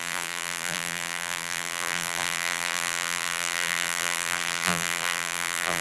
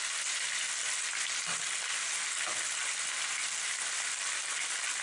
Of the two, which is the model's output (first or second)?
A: first